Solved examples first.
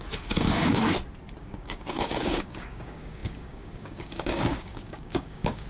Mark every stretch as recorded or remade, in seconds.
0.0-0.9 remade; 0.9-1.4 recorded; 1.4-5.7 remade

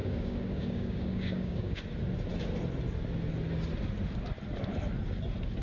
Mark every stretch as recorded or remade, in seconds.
0.0-1.8 remade; 1.8-5.6 recorded

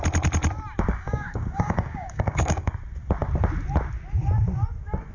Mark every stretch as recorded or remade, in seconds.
0.0-0.9 recorded; 0.9-2.7 remade; 2.7-5.1 recorded

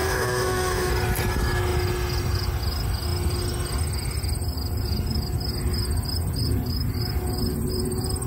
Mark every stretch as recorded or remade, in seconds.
0.0-0.9 remade; 0.9-8.3 recorded

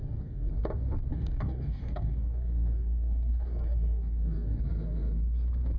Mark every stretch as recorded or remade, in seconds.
0.0-0.5 remade; 0.5-1.1 recorded; 1.1-4.6 remade; 4.6-5.8 recorded

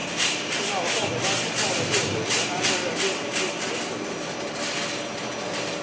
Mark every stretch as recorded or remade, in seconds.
0.0-5.8 recorded

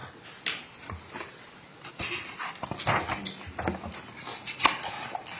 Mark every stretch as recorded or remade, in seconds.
0.0-5.4 recorded

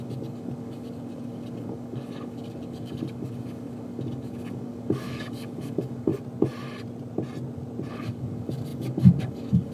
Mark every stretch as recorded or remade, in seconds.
0.0-6.1 remade; 6.1-7.9 recorded; 7.9-9.7 remade